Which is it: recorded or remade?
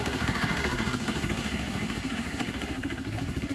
remade